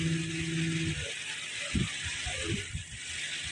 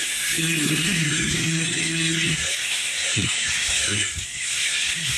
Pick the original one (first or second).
first